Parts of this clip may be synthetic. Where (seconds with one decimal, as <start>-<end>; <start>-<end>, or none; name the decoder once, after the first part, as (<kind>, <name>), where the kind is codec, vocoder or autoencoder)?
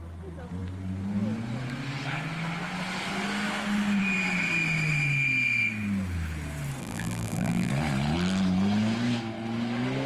6.8-7.7 (vocoder, BigVGAN v2)